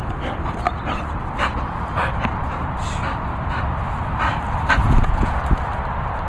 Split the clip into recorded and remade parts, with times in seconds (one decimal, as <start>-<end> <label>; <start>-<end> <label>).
0.0-4.8 recorded; 4.8-5.4 remade; 5.4-6.3 recorded